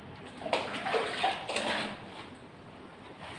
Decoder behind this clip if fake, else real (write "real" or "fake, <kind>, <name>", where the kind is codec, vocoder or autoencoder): real